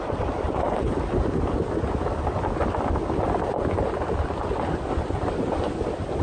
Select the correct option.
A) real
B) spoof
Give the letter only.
A